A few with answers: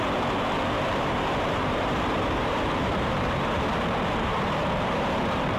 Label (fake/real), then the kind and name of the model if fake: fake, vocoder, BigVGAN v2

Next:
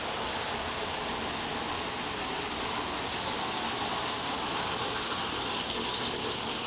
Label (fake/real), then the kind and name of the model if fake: real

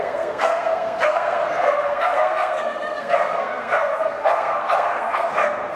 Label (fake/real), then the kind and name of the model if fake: fake, codec, SNAC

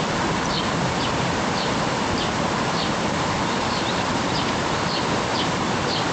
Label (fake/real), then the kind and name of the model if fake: fake, vocoder, BigVGAN v2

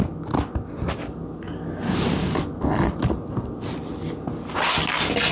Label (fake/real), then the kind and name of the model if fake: real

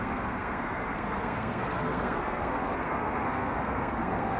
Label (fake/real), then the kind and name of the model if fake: fake, codec, SNAC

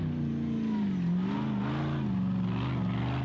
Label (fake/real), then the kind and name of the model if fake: real